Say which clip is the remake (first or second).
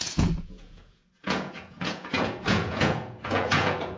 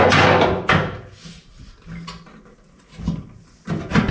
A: first